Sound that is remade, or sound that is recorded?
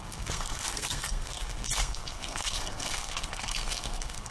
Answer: remade